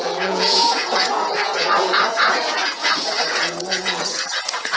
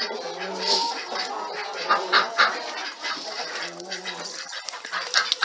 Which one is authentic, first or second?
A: second